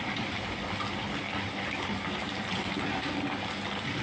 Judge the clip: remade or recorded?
recorded